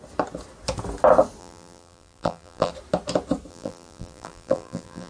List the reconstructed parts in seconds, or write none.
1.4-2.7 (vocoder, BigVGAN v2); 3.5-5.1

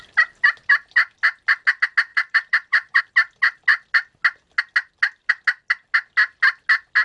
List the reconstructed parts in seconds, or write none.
2.1-3.0 (vocoder, BigVGAN v2)

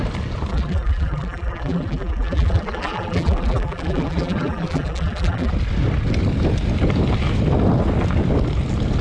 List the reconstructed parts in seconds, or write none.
0.5-5.5 (vocoder, BigVGAN v2)